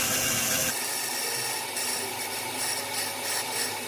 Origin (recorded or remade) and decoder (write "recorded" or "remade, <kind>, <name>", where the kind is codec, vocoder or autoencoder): recorded